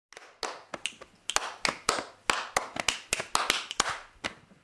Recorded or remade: recorded